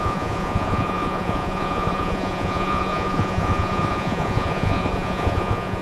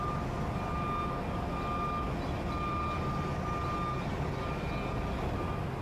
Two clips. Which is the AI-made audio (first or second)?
first